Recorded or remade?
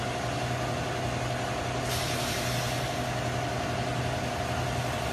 recorded